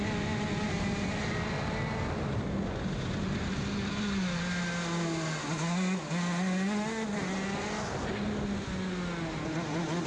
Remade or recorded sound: recorded